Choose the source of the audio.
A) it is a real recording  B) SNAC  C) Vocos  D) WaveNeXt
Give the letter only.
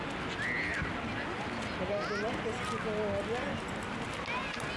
A